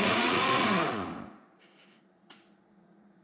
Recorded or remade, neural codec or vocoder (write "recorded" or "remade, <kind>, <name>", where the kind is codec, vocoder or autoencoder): remade, vocoder, Vocos